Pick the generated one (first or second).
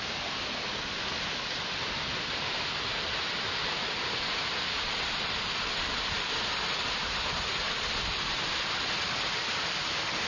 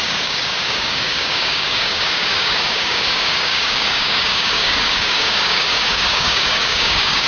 second